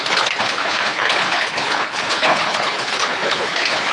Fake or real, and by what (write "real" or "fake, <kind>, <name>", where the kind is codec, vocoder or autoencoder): fake, codec, HILCodec